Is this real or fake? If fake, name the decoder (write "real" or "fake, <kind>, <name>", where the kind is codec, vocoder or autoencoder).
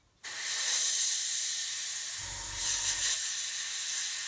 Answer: fake, vocoder, BigVGAN v2